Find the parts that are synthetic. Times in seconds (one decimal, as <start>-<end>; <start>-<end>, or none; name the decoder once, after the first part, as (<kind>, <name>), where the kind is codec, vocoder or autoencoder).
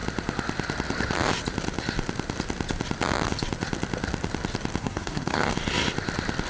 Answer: 4.8-5.5 (codec, SNAC)